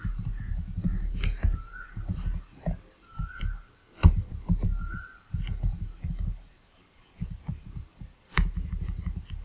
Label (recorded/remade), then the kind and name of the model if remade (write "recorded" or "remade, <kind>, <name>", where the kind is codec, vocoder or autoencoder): recorded